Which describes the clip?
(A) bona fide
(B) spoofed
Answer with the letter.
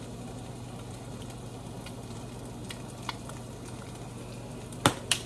A